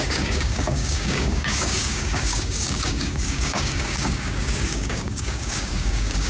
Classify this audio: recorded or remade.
remade